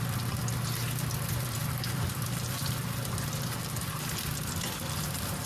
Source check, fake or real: fake